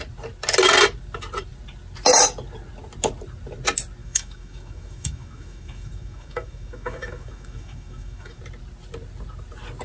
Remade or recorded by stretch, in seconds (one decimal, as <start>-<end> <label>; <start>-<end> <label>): 0.0-4.0 recorded; 4.0-8.4 remade; 8.4-9.8 recorded